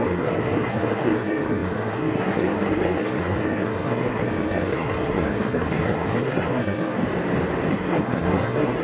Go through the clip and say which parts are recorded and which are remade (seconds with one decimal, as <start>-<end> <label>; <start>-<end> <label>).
0.0-7.0 remade; 7.0-7.7 recorded; 7.7-8.8 remade